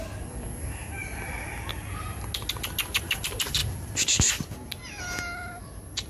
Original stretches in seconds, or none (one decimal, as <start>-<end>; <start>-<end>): 0.0-6.1